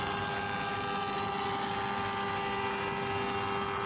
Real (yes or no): yes